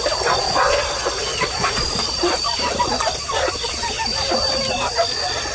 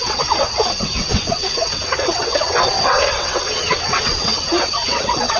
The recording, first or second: first